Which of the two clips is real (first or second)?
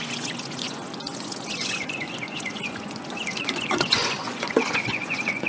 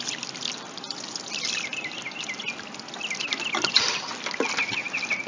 second